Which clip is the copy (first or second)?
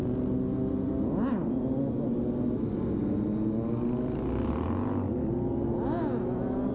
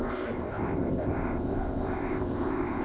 second